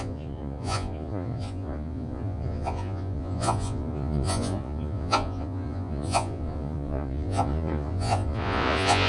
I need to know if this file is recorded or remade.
remade